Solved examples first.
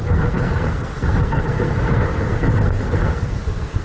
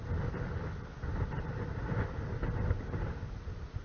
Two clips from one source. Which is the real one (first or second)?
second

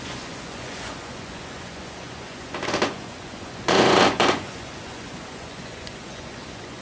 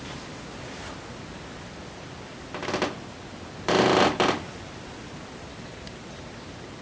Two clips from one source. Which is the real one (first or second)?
second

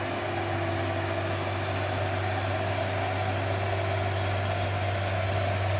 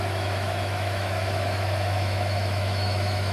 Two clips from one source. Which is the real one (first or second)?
first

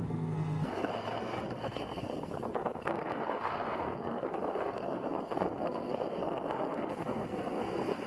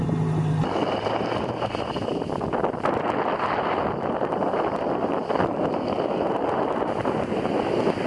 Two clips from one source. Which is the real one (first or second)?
second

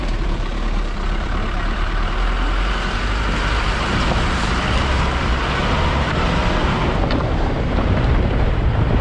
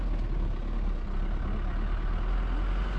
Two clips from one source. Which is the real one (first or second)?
second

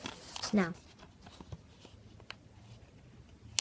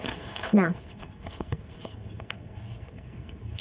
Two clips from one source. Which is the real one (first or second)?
first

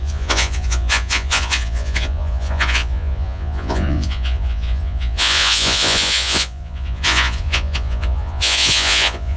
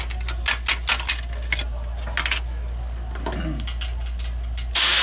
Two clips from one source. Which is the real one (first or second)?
second